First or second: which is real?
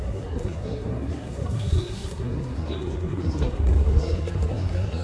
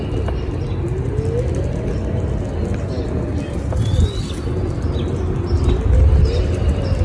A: second